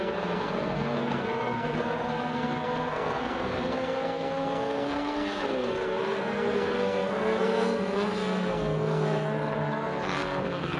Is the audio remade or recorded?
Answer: remade